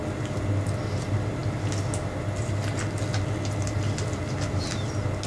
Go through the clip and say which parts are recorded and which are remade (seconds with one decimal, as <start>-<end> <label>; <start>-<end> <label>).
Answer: 0.0-5.3 recorded